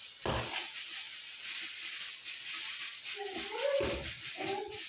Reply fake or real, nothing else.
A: real